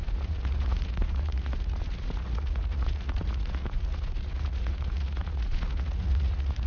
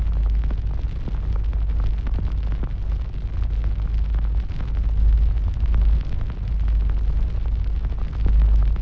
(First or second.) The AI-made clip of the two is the first